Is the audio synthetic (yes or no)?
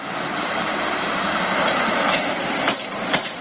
yes